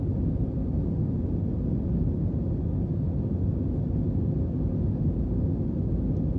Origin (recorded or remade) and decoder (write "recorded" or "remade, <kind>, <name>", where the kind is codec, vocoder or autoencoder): recorded